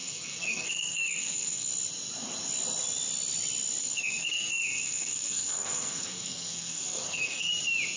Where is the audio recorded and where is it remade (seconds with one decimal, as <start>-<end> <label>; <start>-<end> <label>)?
0.0-1.7 remade; 1.7-3.8 recorded; 3.8-7.5 remade; 7.5-8.0 recorded